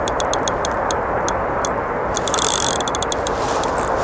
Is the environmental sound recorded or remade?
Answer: recorded